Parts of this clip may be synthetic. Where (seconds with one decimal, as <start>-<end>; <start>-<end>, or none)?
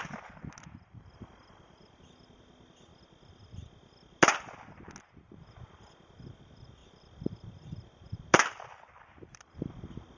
none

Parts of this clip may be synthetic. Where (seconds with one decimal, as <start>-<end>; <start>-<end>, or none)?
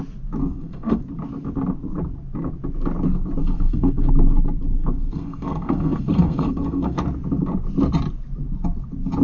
0.4-1.0; 3.4-4.1; 4.7-7.0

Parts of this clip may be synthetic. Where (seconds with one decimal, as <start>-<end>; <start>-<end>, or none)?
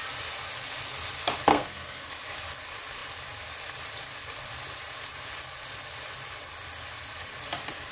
1.5-2.1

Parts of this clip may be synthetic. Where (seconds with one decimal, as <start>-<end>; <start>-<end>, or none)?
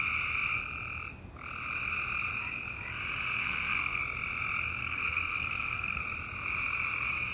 3.4-4.0; 4.8-6.0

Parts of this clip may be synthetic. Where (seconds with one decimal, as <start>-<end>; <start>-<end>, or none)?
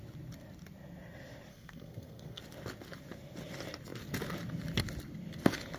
1.5-2.4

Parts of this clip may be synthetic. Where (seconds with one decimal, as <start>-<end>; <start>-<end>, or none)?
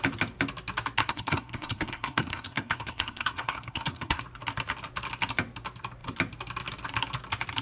1.0-4.2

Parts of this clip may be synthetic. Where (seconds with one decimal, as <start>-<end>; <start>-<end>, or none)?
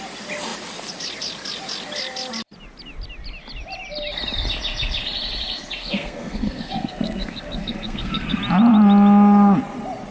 5.8-8.4